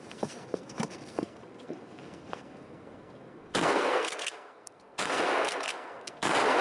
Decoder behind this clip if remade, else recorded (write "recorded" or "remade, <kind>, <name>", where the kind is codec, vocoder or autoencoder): remade, codec, SNAC